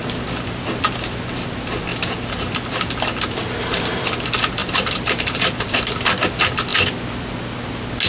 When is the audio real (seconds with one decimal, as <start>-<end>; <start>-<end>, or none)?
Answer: 0.0-1.9; 2.4-4.6; 5.7-8.1